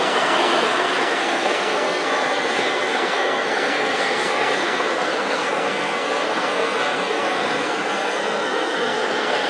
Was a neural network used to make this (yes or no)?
yes